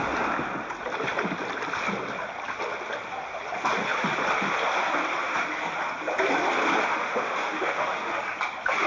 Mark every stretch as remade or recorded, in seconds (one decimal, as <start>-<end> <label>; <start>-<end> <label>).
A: 0.0-6.8 recorded; 6.8-8.1 remade; 8.1-8.9 recorded

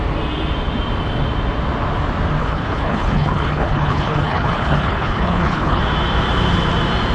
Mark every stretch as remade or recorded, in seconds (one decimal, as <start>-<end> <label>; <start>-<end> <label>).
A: 0.0-2.4 recorded; 2.4-5.8 remade; 5.8-7.1 recorded

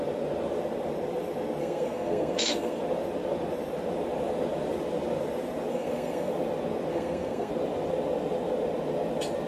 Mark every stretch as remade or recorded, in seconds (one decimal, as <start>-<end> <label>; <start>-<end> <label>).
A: 0.0-1.6 recorded; 1.6-2.8 remade; 2.8-5.7 recorded; 5.7-6.3 remade; 6.3-6.9 recorded; 6.9-7.5 remade; 7.5-9.5 recorded